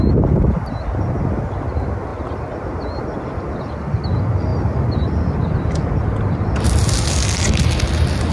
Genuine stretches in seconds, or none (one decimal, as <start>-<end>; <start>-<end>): 0.0-8.3